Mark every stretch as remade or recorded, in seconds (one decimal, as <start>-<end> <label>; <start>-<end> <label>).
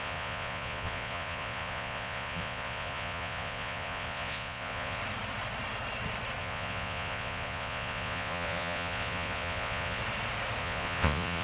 0.0-5.0 remade; 5.0-6.4 recorded; 6.4-10.0 remade; 10.0-10.6 recorded; 10.6-11.4 remade